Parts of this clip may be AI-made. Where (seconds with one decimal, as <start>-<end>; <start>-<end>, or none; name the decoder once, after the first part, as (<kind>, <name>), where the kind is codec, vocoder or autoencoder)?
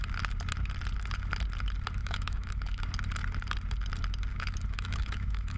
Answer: 2.0-2.8 (autoencoder, DAC-VAE); 4.3-5.6